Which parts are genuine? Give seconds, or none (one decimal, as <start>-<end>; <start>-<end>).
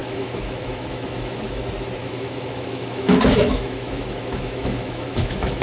1.6-2.0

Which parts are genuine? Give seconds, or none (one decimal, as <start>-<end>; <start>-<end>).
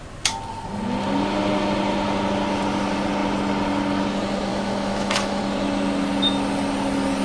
0.0-4.5; 5.4-7.2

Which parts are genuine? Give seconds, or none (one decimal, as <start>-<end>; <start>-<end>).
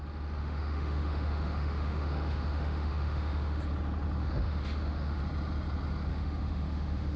0.0-0.4; 3.6-4.2; 5.2-6.1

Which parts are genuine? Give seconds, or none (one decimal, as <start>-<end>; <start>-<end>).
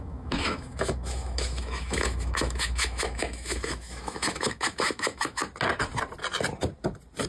5.4-7.3